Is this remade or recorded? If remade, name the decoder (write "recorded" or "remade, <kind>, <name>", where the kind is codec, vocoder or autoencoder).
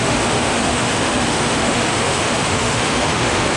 remade, autoencoder, DAC-VAE